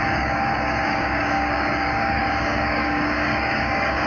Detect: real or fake fake